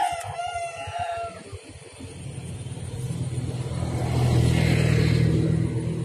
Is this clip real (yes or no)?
yes